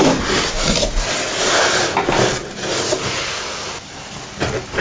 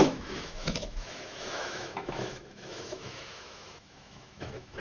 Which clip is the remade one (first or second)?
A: second